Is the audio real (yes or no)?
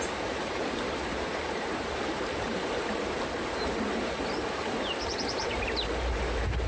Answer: no